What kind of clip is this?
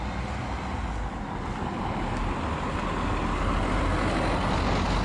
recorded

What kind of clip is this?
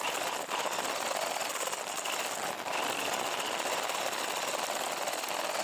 recorded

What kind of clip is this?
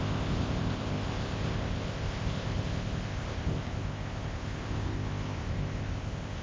remade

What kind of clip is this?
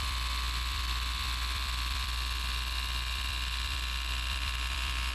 remade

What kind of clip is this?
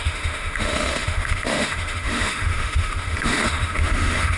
remade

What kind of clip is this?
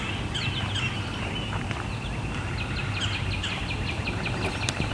recorded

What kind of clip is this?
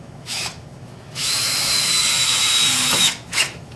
remade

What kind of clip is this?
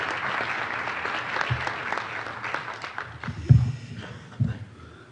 recorded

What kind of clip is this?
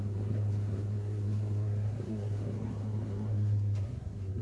remade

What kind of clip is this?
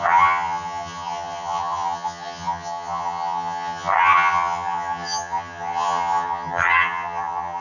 remade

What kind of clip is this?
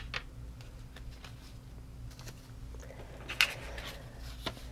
recorded